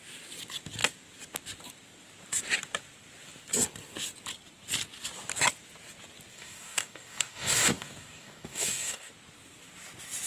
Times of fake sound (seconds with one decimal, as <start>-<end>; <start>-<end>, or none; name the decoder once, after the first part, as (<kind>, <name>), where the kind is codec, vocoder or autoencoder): 6.3-9.1 (codec, DAC)